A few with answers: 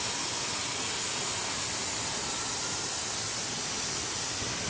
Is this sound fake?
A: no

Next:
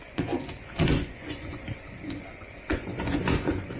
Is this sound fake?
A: yes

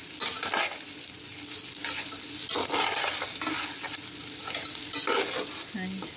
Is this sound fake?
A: no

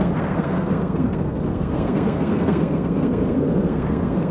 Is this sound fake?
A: yes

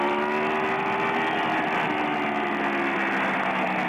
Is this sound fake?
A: no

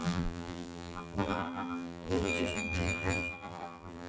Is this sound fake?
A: yes